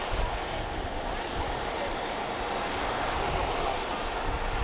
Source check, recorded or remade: recorded